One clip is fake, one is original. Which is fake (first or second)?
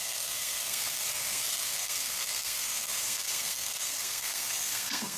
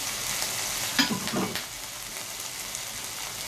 first